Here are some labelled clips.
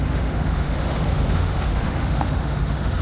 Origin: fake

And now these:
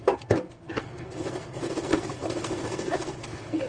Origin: fake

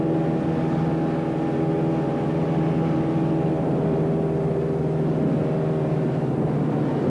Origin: real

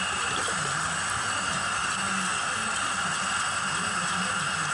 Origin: real